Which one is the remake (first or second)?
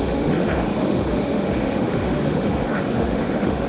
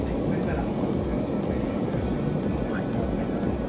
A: first